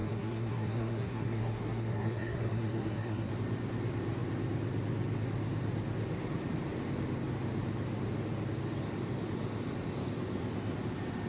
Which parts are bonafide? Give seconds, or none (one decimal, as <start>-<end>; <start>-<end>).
3.3-11.3